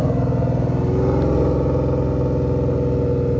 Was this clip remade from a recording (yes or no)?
no